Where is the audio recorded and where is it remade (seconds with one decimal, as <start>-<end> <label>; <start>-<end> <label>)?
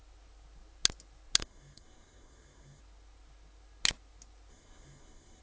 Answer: 0.0-1.4 recorded; 1.4-2.8 remade; 2.8-4.5 recorded; 4.5-5.4 remade